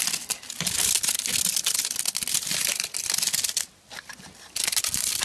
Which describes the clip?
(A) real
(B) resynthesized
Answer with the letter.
A